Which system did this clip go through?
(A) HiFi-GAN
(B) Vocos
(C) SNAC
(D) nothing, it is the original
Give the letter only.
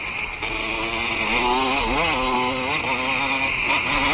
D